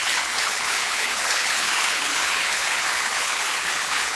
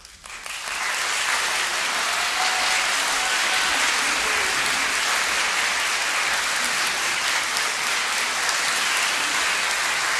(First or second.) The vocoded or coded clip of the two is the first